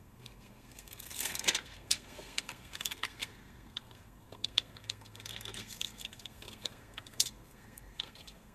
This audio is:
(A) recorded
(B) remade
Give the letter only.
B